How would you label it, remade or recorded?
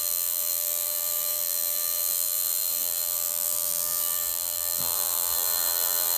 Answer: remade